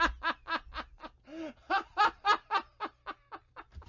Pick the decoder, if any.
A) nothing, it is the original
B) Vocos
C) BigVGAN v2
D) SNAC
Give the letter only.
A